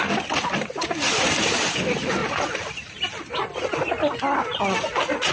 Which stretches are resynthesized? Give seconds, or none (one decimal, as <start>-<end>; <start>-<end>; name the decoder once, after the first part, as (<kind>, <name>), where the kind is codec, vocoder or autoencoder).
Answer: none